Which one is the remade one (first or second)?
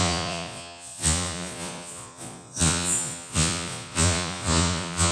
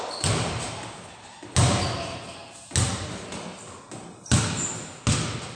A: first